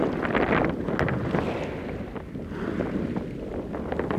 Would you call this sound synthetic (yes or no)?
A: no